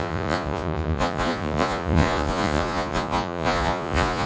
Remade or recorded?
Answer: remade